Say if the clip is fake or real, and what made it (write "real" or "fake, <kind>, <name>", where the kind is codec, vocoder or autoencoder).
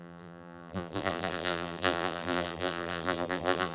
fake, vocoder, BigVGAN v2